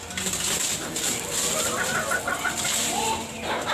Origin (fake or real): real